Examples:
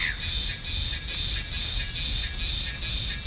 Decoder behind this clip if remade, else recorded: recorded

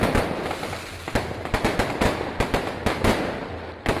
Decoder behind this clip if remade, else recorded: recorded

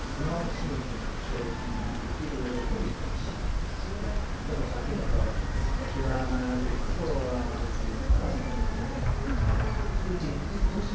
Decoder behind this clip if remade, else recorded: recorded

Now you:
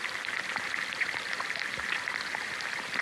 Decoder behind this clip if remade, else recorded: recorded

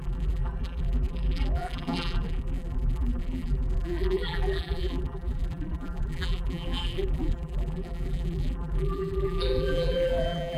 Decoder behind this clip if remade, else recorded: remade, vocoder, BigVGAN v2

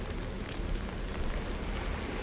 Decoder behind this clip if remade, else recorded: recorded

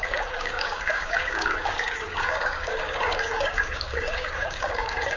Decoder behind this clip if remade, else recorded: remade, codec, DAC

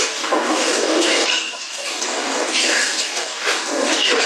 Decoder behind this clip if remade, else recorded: remade, codec, DAC